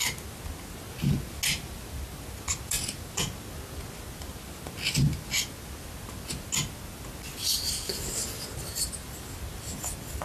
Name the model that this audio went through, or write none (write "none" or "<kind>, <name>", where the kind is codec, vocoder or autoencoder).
none